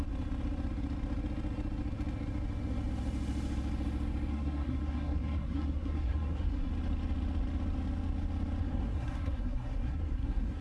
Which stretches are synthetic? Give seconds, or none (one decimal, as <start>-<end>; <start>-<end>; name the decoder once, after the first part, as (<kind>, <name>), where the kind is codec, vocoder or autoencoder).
4.3-6.7 (codec, SNAC); 8.6-10.6